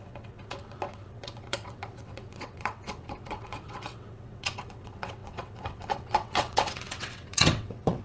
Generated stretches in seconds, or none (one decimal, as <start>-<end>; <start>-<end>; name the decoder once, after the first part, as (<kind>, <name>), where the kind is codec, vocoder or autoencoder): 0.0-8.0 (vocoder, WaveNeXt)